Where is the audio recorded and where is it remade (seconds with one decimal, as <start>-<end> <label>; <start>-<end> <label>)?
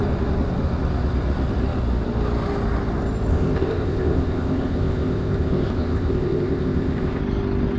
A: 0.0-3.3 recorded; 3.3-7.2 remade; 7.2-7.8 recorded